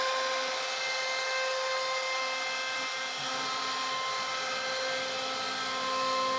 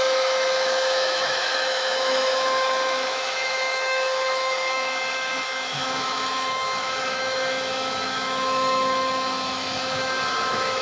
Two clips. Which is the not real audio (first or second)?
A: second